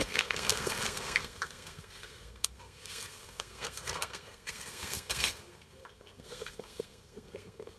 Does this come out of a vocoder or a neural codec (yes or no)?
yes